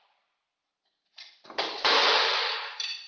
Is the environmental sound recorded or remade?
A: recorded